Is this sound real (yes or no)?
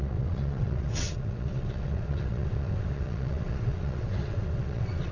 no